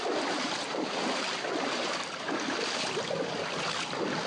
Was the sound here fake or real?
real